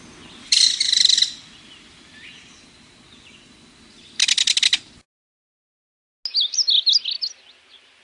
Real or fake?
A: real